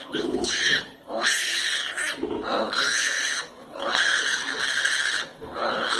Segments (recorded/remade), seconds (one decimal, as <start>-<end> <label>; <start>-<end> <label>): 0.0-2.0 remade; 2.0-2.6 recorded; 2.6-6.0 remade